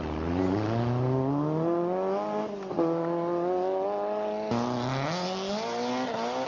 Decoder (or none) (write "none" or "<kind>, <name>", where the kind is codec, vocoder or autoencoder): none